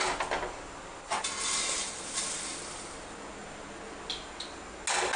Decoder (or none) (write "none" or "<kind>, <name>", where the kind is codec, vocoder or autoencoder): none